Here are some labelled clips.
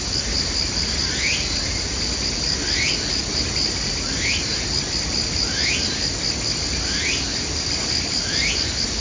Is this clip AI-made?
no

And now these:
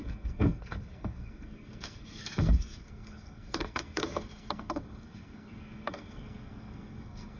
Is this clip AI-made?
yes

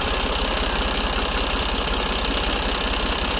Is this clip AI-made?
yes